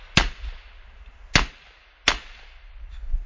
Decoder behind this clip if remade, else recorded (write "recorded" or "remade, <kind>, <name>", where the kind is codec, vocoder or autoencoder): recorded